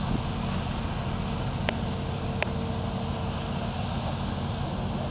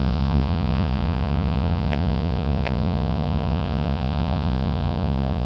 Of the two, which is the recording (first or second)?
first